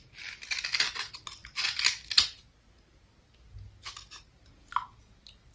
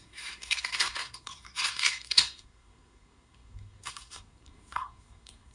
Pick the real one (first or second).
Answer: first